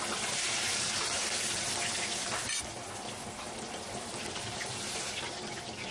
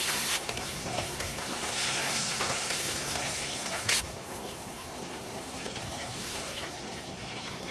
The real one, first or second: first